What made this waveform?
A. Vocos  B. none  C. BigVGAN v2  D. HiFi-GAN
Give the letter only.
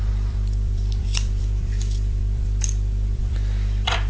C